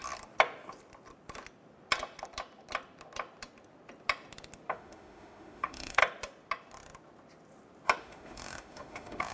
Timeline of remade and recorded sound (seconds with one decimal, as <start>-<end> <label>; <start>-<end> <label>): 0.0-4.7 recorded; 4.7-6.0 remade; 6.0-8.0 recorded; 8.0-9.3 remade